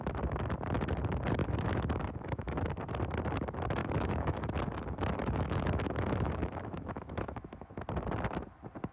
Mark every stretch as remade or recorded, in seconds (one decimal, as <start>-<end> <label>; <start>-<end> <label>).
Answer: 0.0-1.4 recorded; 1.4-2.7 remade; 2.7-3.8 recorded; 3.8-7.7 remade; 7.7-8.9 recorded